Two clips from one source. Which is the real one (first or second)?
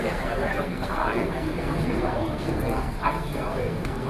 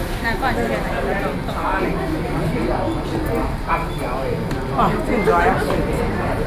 second